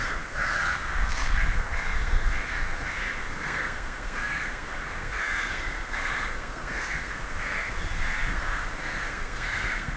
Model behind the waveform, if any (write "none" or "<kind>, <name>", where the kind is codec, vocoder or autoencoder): codec, SNAC